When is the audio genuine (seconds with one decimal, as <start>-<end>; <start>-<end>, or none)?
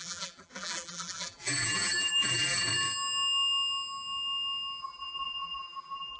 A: 2.7-4.8